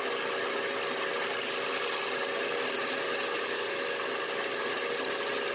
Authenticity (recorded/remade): recorded